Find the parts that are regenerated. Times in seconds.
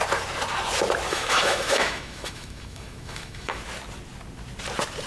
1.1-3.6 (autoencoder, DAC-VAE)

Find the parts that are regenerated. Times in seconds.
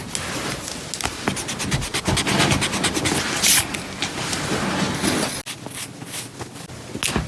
none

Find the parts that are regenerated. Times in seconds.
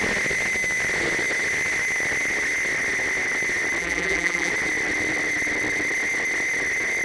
3.8-4.5 (vocoder, BigVGAN v2)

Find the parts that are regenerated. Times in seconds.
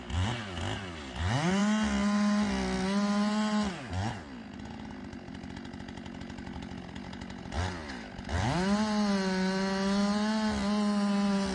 none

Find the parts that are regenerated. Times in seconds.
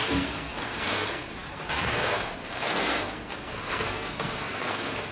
0.0-5.1 (codec, SNAC)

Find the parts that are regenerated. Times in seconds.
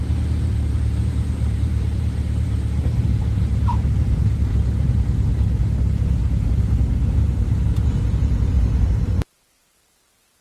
0.0-4.5 (vocoder, BigVGAN v2); 8.5-10.4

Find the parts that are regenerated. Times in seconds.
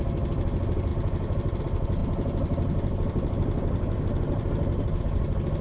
none